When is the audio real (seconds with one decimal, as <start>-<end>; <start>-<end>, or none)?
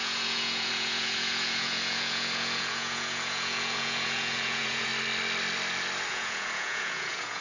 4.9-6.1